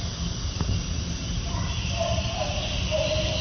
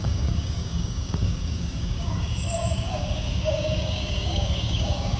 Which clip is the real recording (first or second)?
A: first